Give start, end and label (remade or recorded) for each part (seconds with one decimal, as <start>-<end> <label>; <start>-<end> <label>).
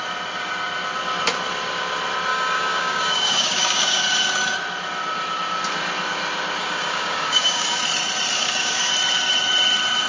0.0-2.3 recorded; 2.3-4.0 remade; 4.0-6.6 recorded; 6.6-7.8 remade; 7.8-8.3 recorded; 8.3-8.9 remade; 8.9-10.1 recorded